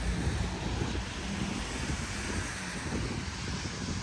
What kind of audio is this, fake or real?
real